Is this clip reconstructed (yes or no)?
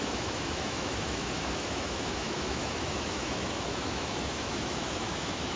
yes